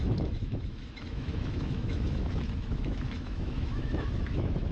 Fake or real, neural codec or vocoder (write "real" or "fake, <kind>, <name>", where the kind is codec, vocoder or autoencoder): fake, autoencoder, DAC-VAE